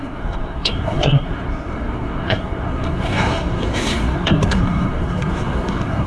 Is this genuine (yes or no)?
no